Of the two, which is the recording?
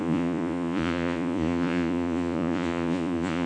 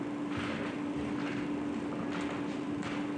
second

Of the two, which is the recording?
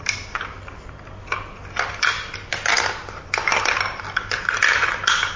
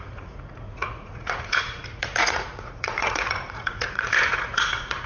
first